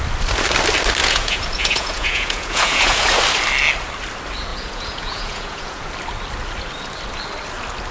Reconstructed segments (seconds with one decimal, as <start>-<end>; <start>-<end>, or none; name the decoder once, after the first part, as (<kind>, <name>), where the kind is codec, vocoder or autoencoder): 1.0-3.2 (vocoder, Vocos); 4.5-5.9